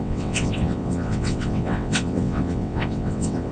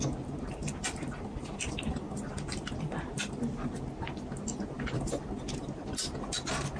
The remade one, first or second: first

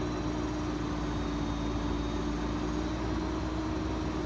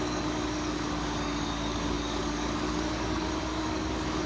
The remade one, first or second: second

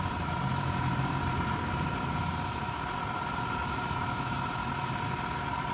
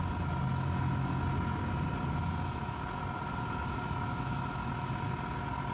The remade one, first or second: first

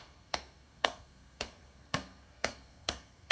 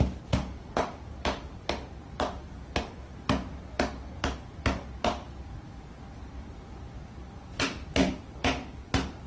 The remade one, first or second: first